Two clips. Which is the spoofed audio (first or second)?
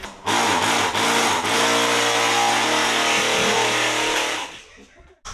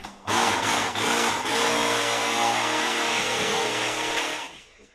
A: second